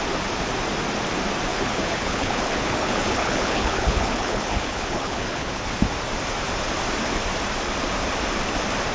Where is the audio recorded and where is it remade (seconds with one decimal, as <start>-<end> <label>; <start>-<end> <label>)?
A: 0.0-1.5 recorded; 1.5-5.7 remade; 5.7-8.9 recorded